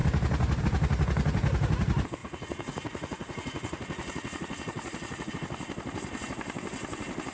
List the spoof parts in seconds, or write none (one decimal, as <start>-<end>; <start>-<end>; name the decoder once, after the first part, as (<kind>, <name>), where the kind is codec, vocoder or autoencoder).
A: 2.2-5.3 (vocoder, Vocos)